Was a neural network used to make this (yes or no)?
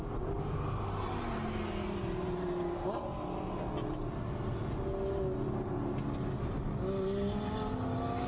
no